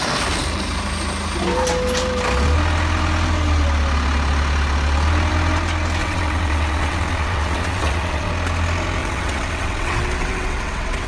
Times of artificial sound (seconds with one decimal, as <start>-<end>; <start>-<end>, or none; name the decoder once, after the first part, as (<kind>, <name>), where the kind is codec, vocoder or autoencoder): 6.0-8.3 (vocoder, WaveNeXt); 9.0-11.1